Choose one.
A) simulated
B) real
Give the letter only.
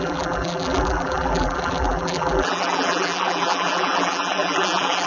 A